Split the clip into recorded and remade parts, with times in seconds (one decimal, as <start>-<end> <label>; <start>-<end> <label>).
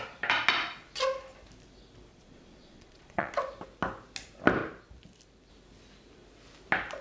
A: 0.0-2.1 recorded; 2.1-3.3 remade; 3.3-7.0 recorded